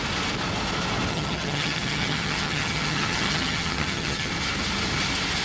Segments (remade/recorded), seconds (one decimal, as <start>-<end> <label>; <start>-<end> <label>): 0.0-1.1 recorded; 1.1-4.3 remade; 4.3-5.4 recorded